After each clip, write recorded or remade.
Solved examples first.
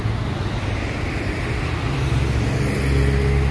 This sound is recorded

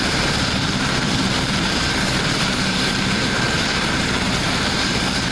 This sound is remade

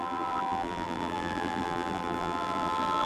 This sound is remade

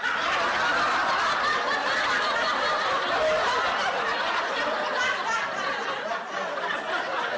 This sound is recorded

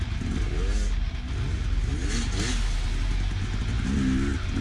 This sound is recorded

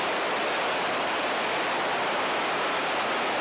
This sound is recorded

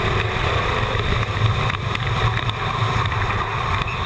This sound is remade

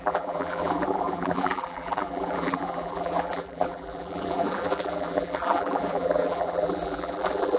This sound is remade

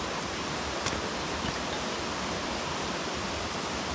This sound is recorded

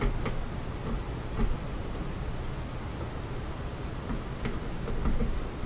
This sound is recorded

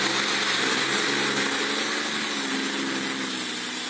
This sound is recorded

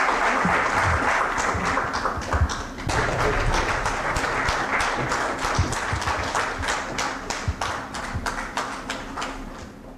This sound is recorded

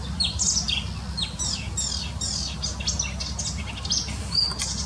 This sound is recorded